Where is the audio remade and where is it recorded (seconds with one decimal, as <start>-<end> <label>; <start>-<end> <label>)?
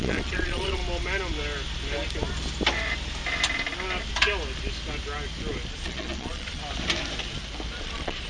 0.0-0.8 remade; 0.8-5.7 recorded; 5.7-6.6 remade; 6.6-7.8 recorded; 7.8-8.3 remade